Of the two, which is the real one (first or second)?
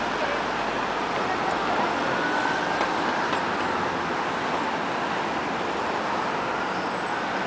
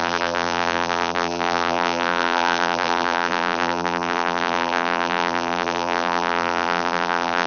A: first